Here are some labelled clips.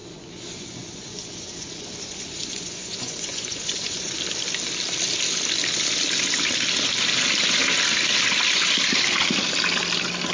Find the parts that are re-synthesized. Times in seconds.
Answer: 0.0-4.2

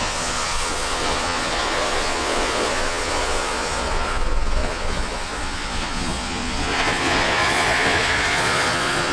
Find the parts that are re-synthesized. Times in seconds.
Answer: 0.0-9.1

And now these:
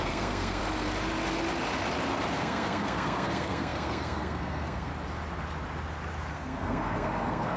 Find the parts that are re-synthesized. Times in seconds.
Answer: 0.0-0.6; 2.4-4.9; 6.3-7.6

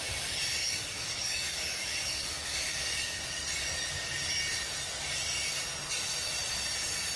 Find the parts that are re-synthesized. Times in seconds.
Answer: 0.6-3.2

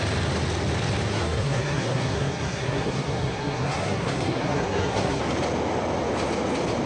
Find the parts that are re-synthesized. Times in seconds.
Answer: 1.1-5.2

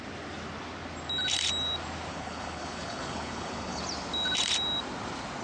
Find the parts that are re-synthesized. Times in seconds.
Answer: 2.1-3.8